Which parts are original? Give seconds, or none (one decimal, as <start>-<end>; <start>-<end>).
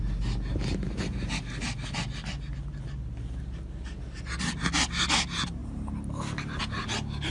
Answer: 0.0-7.3